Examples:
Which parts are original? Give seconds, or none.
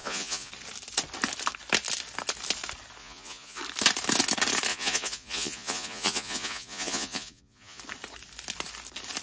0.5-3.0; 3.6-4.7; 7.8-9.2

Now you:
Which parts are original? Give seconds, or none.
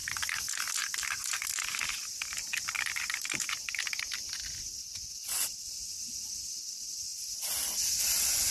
0.0-8.5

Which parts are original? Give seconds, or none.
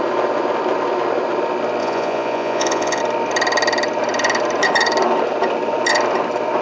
0.0-1.8; 3.0-6.6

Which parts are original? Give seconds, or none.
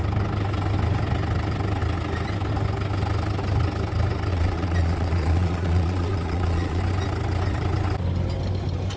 0.0-4.3; 6.8-9.0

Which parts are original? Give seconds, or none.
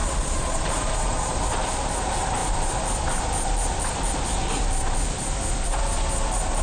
0.6-6.6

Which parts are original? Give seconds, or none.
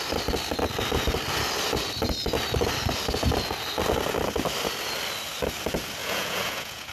0.0-6.0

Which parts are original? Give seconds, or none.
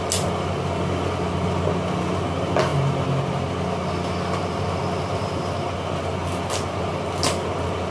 0.0-7.9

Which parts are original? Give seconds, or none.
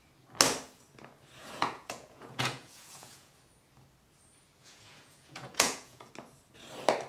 0.0-1.4; 3.3-4.6; 6.1-7.1